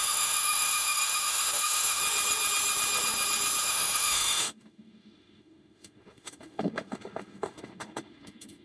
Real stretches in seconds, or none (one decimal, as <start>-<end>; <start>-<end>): 2.0-3.6